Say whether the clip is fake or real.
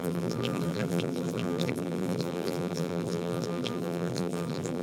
fake